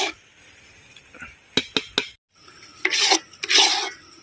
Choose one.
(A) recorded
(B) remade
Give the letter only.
A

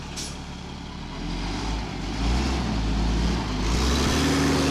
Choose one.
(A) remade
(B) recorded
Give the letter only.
B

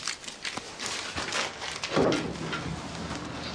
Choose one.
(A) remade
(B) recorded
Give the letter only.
B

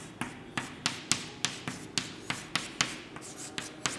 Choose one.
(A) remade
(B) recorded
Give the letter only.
B